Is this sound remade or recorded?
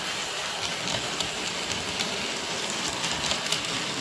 recorded